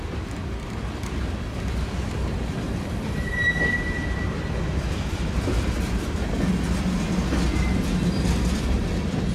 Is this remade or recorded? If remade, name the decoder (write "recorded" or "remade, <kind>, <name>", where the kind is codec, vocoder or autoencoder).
recorded